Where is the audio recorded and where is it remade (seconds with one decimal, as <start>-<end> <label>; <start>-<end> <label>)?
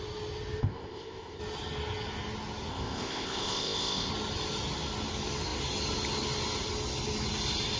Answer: 0.0-0.6 recorded; 0.6-1.4 remade; 1.4-2.7 recorded; 2.7-4.1 remade; 4.1-7.8 recorded